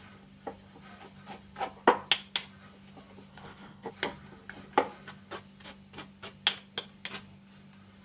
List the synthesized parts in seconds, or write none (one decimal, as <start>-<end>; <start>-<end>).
3.3-3.9